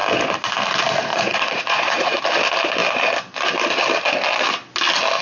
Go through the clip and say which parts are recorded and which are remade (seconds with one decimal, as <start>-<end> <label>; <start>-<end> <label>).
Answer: 0.0-1.1 recorded; 1.1-2.2 remade; 2.2-5.2 recorded